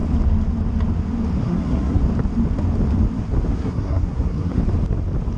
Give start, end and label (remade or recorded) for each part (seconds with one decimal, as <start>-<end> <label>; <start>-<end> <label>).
0.0-1.4 recorded; 1.4-2.0 remade; 2.0-3.5 recorded; 3.5-4.6 remade; 4.6-5.4 recorded